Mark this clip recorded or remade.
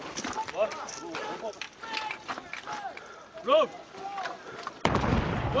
recorded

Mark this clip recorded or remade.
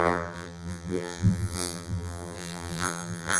remade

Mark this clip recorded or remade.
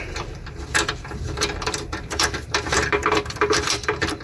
remade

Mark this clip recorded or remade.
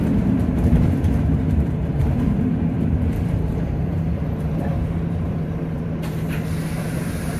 remade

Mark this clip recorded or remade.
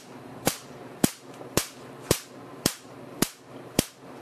remade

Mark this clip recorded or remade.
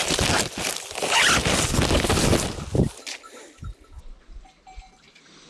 recorded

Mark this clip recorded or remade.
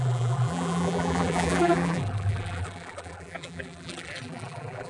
remade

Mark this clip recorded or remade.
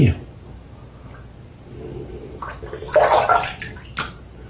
recorded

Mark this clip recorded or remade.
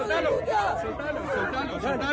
recorded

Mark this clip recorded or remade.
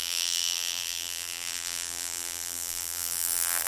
remade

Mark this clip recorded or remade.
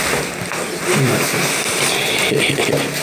recorded